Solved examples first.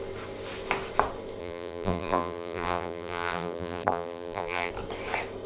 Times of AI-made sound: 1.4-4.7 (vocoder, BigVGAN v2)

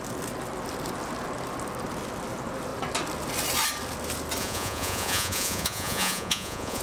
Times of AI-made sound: 4.4-6.8 (vocoder, Vocos)